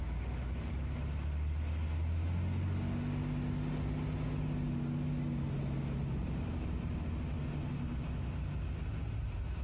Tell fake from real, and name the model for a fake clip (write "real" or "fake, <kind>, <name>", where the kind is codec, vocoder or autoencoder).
real